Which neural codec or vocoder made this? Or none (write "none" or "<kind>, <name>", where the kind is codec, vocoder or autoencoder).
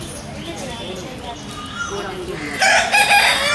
none